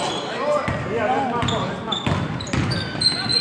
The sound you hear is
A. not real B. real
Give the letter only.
B